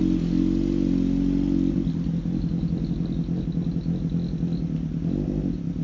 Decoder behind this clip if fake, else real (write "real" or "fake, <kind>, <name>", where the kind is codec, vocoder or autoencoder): real